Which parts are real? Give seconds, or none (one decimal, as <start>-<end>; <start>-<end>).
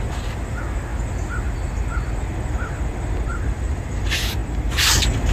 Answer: 0.0-3.3; 4.0-5.3